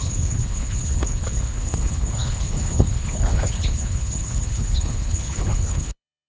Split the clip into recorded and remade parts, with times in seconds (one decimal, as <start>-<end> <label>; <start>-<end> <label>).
0.0-6.3 remade

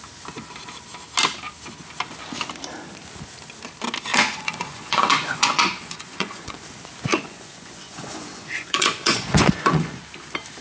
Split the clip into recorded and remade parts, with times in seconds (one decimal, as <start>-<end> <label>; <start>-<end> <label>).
0.0-4.1 recorded; 4.1-6.5 remade; 6.5-7.1 recorded; 7.1-10.0 remade; 10.0-10.6 recorded

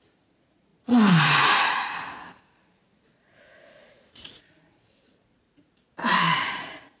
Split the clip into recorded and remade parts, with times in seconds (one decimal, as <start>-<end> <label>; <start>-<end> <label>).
0.0-5.8 remade; 5.8-6.4 recorded; 6.4-7.0 remade

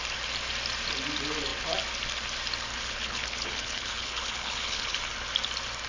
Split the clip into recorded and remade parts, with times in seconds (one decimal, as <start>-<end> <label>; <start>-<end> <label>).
0.0-2.7 recorded; 2.7-5.0 remade; 5.0-5.9 recorded

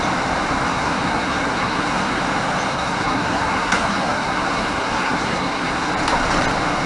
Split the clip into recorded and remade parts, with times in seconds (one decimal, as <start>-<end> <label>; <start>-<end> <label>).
0.0-0.7 recorded; 0.7-2.2 remade; 2.2-2.7 recorded; 2.7-5.9 remade; 5.9-6.9 recorded

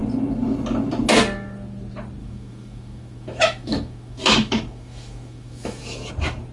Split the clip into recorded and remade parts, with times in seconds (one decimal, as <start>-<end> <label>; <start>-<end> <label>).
0.0-2.2 recorded; 2.2-6.1 remade; 6.1-6.5 recorded

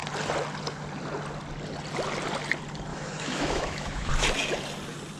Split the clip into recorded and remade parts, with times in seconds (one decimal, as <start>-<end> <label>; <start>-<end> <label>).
0.0-2.9 recorded; 2.9-4.1 remade; 4.1-5.2 recorded